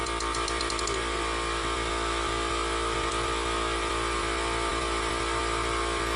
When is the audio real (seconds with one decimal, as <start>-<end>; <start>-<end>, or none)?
0.0-6.2